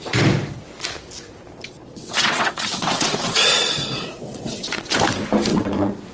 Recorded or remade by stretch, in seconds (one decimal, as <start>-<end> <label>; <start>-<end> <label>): 0.0-1.8 recorded; 1.8-4.9 remade; 4.9-5.5 recorded; 5.5-6.1 remade